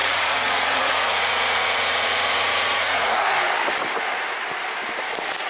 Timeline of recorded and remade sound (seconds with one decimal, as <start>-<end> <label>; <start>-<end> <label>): 0.0-3.3 remade; 3.3-5.5 recorded